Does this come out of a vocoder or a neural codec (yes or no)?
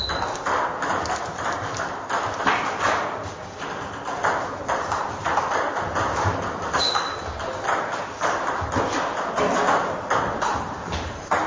no